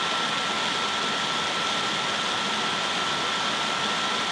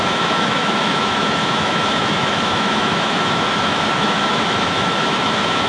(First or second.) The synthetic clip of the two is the second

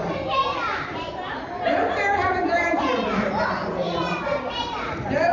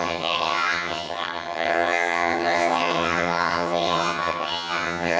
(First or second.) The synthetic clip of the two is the second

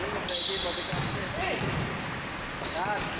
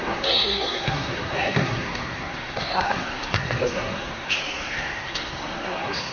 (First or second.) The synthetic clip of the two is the second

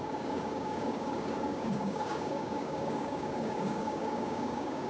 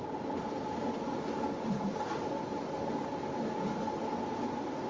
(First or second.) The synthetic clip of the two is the first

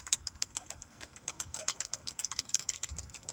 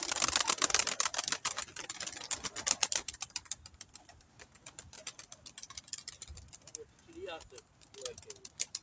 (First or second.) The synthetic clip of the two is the first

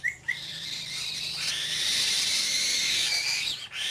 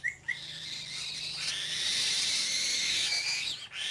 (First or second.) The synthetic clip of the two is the first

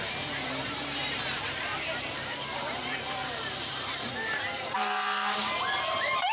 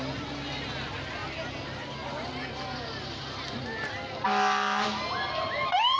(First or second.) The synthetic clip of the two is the first